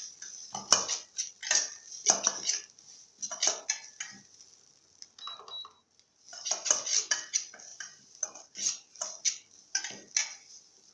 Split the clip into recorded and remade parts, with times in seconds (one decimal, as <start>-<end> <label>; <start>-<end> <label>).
0.0-7.7 recorded; 7.7-9.0 remade; 9.0-10.2 recorded; 10.2-10.9 remade